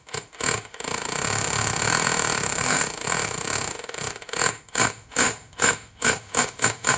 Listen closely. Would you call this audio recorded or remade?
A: remade